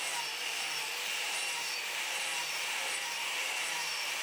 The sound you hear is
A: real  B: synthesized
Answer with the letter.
B